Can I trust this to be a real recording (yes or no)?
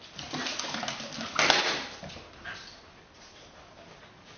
yes